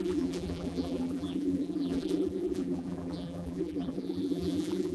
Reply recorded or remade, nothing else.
remade